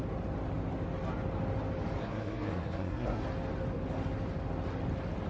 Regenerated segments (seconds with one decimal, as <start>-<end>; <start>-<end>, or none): 2.0-3.2